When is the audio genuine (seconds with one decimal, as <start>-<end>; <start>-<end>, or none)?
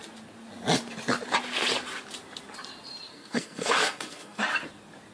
0.0-3.1; 4.4-5.1